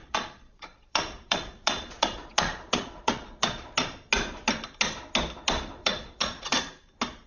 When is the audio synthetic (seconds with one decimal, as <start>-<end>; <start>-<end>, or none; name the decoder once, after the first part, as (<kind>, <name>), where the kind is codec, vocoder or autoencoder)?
0.0-3.7 (vocoder, Vocos); 5.8-6.5